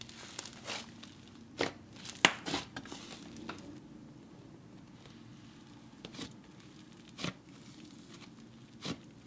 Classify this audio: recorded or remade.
recorded